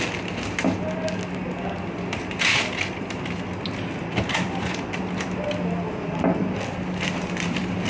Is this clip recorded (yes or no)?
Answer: yes